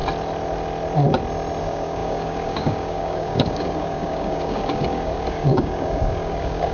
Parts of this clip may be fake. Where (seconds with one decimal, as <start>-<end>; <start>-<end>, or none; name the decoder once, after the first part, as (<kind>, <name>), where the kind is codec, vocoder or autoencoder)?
1.6-6.7 (codec, DAC)

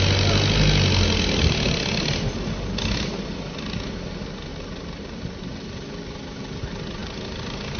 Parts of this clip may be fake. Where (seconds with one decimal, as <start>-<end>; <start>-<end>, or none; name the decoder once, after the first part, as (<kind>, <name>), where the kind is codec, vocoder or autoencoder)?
4.5-6.6 (vocoder, BigVGAN v2); 7.0-7.8

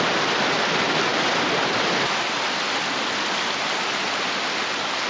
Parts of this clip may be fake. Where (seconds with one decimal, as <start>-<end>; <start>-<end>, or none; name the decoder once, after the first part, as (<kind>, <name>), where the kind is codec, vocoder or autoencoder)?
none

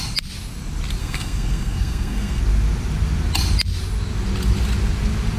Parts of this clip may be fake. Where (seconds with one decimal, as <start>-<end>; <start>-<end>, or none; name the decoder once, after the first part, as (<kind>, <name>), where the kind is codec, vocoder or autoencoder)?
1.0-2.4 (codec, SNAC)

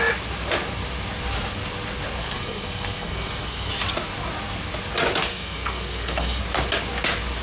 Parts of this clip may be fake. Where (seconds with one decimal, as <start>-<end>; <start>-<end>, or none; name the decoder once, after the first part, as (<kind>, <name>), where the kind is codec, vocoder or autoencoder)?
2.2-3.7 (codec, SNAC); 5.3-6.4